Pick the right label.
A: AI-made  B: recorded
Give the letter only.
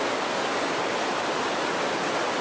B